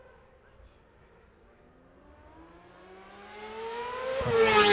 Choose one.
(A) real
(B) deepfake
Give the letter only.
A